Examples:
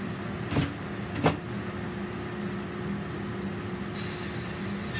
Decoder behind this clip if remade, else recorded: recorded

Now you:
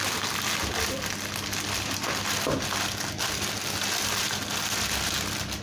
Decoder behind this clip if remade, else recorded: recorded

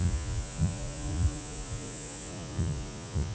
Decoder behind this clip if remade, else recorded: remade, vocoder, Vocos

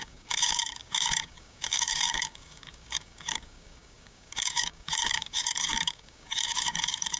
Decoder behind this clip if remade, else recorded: remade, codec, DAC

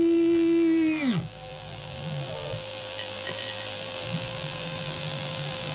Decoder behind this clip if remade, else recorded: remade, vocoder, BigVGAN v2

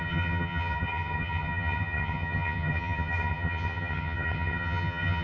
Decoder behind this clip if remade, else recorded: remade, vocoder, HiFi-GAN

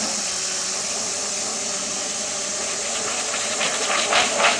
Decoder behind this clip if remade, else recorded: recorded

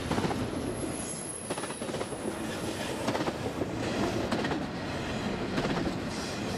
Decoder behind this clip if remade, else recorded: recorded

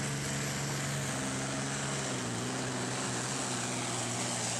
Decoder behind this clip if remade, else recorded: recorded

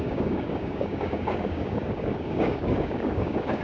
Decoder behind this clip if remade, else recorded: remade, codec, DAC